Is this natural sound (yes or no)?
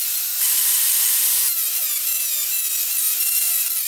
yes